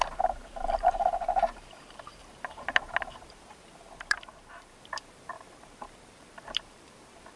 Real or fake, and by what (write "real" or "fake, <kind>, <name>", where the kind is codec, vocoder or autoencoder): fake, vocoder, BigVGAN v2